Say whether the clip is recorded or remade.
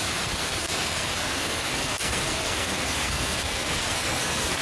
remade